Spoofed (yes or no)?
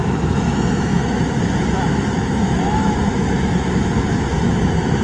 yes